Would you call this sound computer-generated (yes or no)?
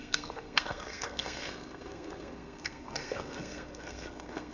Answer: yes